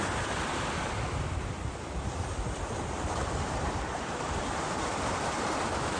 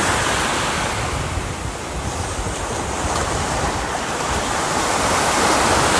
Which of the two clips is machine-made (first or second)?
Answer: first